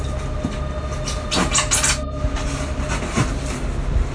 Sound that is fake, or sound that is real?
real